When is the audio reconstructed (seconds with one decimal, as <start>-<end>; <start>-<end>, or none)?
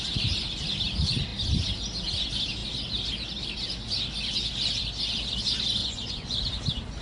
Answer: 5.8-6.4